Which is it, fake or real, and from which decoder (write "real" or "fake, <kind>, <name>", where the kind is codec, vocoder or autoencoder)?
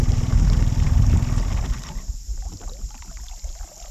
real